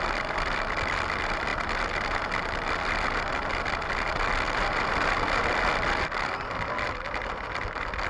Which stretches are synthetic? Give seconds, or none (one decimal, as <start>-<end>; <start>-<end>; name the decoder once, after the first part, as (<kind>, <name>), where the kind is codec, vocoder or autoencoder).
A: none